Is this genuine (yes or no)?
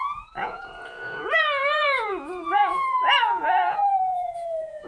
no